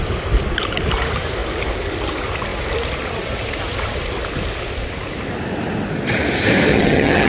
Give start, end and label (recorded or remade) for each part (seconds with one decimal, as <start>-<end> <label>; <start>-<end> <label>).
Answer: 0.0-6.7 recorded; 6.7-7.3 remade